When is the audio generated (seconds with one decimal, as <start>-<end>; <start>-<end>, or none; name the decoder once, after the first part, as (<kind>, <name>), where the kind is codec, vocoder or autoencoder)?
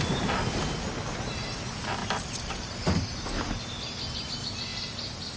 2.0-3.2 (vocoder, BigVGAN v2)